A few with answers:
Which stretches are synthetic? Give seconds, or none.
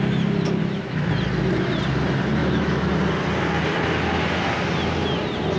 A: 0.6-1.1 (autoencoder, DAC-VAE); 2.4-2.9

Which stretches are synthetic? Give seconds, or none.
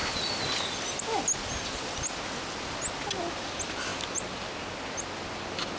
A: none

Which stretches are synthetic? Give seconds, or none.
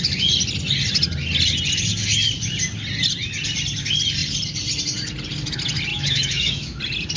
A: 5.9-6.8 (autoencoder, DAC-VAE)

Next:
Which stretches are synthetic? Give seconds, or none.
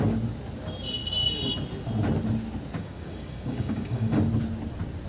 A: 2.8-4.2 (codec, DAC)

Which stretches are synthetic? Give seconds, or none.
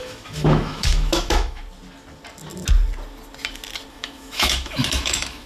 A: 0.0-1.6 (autoencoder, DAC-VAE); 3.9-5.5